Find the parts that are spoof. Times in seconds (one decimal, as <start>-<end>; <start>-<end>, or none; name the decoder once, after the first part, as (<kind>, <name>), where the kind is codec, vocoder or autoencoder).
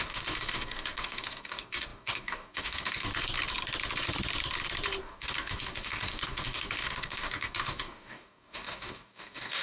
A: 0.0-3.1 (codec, DAC); 5.0-9.6